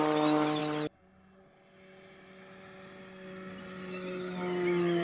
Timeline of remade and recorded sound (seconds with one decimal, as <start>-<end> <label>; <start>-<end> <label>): 0.0-5.0 recorded